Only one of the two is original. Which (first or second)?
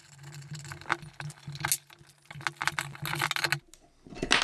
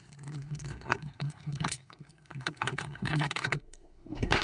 first